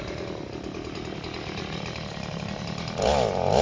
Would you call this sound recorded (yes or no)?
yes